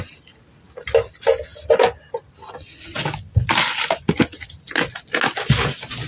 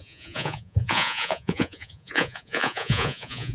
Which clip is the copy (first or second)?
second